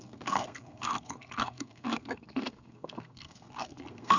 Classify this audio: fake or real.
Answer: fake